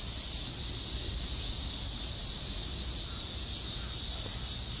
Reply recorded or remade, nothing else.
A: recorded